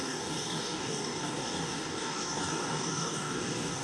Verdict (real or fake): fake